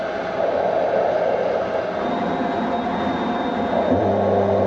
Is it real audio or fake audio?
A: real